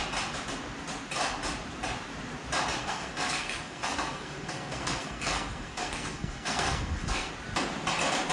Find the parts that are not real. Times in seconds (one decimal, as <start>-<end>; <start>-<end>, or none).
2.8-7.3